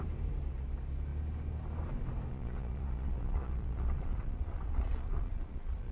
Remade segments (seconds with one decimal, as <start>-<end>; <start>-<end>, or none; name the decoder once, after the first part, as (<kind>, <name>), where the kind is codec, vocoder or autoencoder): 2.3-5.9 (vocoder, Vocos)